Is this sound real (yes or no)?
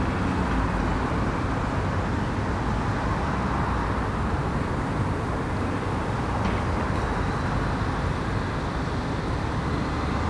yes